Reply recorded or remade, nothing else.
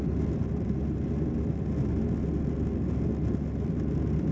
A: recorded